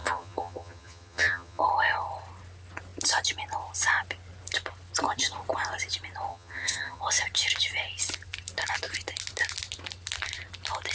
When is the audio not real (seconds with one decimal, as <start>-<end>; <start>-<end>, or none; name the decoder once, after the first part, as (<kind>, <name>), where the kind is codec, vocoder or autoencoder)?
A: 0.0-1.6 (vocoder, HiFi-GAN); 6.3-7.0